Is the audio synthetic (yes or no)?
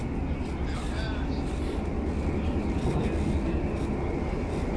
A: no